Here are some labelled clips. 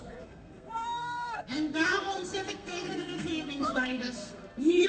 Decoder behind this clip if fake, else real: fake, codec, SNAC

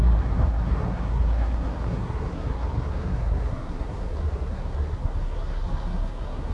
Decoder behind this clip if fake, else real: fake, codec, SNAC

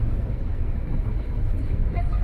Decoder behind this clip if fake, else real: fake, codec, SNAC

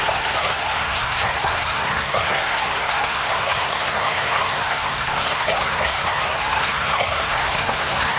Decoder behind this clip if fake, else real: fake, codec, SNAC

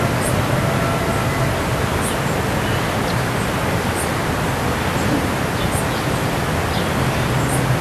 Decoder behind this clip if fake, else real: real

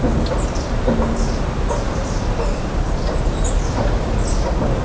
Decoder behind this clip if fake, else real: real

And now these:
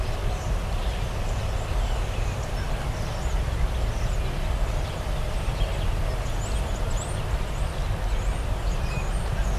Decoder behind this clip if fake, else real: real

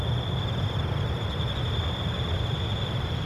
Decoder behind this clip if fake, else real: real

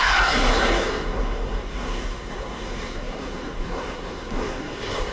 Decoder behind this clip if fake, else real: fake, codec, SNAC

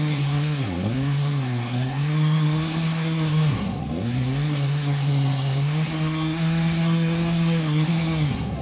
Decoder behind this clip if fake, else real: fake, codec, SNAC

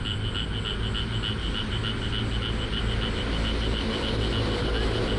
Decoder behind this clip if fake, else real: real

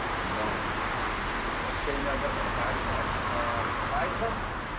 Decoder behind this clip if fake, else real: real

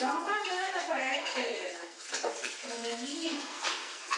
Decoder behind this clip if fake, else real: fake, codec, SNAC